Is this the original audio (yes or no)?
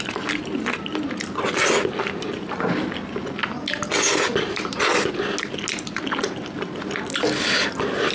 yes